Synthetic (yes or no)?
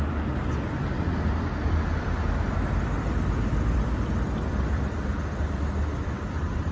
no